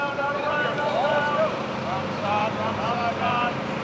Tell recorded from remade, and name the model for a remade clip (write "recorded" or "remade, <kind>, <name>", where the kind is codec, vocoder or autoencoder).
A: remade, vocoder, BigVGAN v2